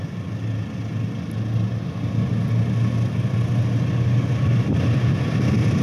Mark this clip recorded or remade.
recorded